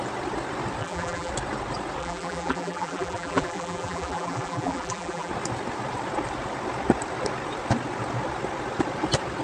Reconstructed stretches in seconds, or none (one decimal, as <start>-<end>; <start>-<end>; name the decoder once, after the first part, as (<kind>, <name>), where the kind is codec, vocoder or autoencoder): 0.8-1.3 (vocoder, BigVGAN v2); 2.0-5.3